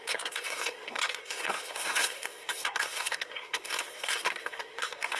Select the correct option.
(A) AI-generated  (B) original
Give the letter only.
A